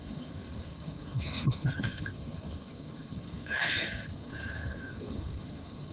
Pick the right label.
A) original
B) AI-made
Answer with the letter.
B